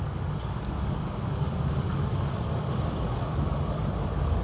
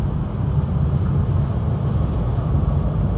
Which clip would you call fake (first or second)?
first